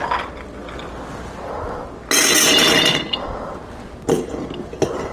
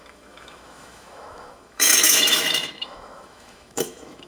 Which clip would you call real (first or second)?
first